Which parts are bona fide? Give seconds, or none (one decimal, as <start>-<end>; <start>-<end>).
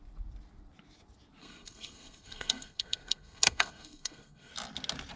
0.0-1.4; 4.5-5.2